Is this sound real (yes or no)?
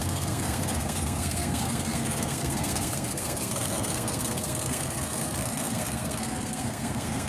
no